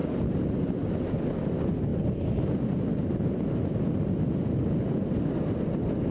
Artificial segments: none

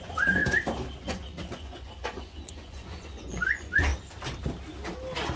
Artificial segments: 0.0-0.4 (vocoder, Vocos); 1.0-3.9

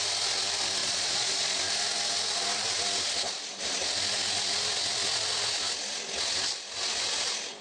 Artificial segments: 0.8-1.6 (vocoder, Vocos)

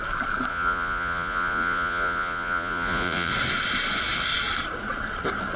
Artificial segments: 0.5-3.3 (vocoder, Vocos)

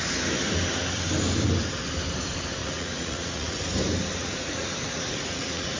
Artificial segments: 2.6-3.6 (vocoder, Vocos); 4.2-5.8

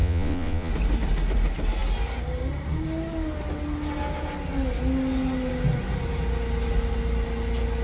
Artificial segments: 0.0-0.7 (vocoder, Vocos)